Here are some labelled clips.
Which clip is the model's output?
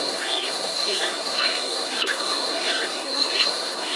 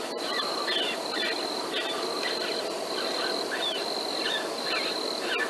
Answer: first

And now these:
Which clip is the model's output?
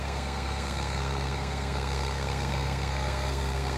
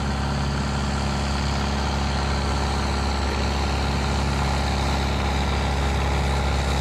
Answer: first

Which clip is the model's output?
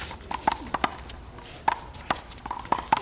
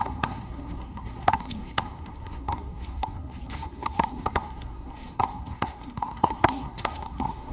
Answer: second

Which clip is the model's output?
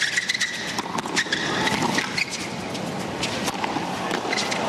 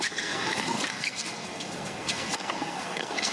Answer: second